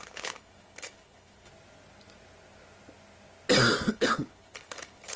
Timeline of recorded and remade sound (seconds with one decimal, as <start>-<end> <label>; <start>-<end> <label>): 0.0-1.5 remade; 1.5-3.9 recorded; 3.9-5.2 remade